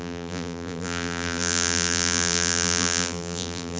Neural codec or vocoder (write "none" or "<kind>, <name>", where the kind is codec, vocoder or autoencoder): vocoder, BigVGAN v2